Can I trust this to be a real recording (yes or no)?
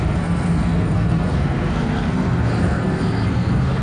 no